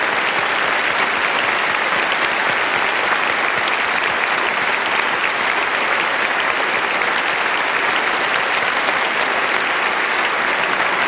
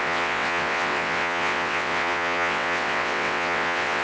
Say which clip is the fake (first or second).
second